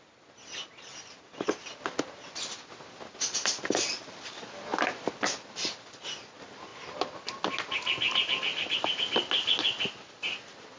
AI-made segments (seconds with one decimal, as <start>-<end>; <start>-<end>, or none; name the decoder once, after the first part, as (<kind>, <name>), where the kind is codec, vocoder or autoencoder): none